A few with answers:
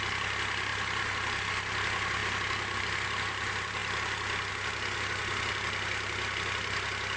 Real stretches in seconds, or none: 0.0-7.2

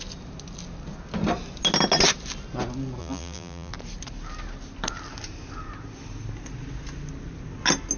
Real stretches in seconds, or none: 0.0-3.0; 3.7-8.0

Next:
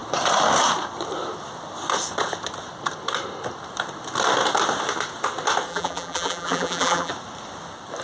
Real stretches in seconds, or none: 0.0-5.7; 7.1-8.0

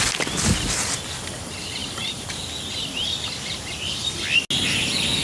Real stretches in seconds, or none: 0.0-1.8; 2.5-5.2

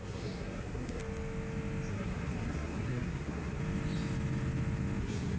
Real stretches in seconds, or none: 1.0-1.9; 3.6-5.0

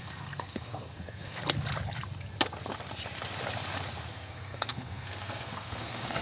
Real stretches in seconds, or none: 1.4-4.1

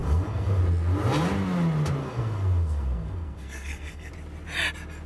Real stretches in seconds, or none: 0.6-2.0; 4.1-5.1

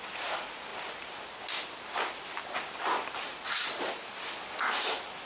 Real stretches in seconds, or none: 0.0-5.3